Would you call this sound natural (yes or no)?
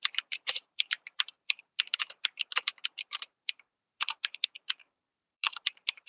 no